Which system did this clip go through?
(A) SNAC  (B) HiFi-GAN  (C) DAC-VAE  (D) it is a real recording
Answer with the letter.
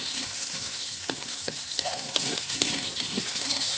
A